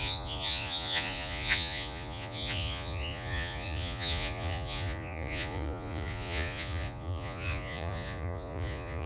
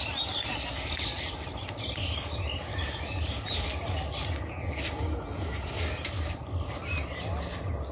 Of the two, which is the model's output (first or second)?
first